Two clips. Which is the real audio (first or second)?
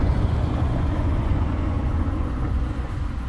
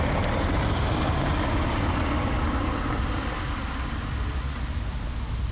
second